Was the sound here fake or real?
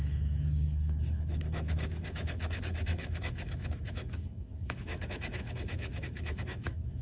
fake